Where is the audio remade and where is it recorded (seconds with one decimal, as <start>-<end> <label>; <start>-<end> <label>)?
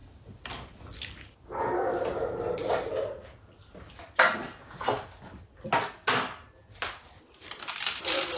0.0-8.4 recorded